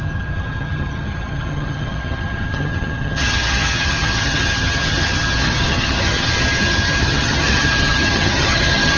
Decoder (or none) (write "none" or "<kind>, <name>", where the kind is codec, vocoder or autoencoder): vocoder, HiFi-GAN